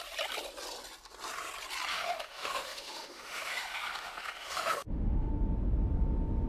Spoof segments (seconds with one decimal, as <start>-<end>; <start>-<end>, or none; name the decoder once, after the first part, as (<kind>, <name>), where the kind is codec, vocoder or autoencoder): 1.9-5.3 (autoencoder, DAC-VAE)